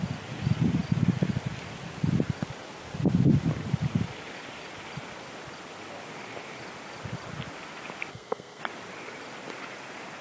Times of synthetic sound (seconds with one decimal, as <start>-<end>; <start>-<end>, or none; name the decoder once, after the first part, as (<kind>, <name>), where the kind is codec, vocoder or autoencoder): 8.1-8.6 (codec, SNAC)